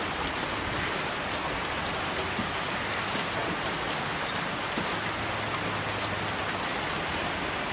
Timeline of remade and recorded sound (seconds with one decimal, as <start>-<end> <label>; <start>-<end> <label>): 0.0-7.7 recorded